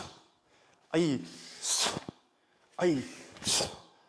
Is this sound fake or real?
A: fake